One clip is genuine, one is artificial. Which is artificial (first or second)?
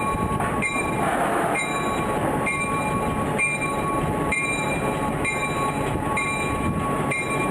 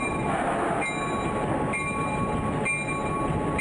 first